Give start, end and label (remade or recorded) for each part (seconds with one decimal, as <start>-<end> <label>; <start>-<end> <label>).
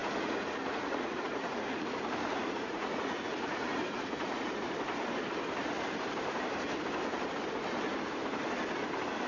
0.0-4.4 remade; 4.4-9.3 recorded